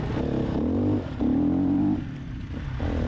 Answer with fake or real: real